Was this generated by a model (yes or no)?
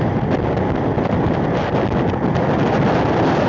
no